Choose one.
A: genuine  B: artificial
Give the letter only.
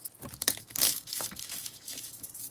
B